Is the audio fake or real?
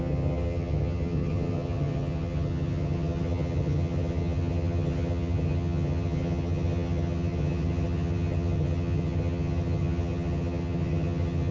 fake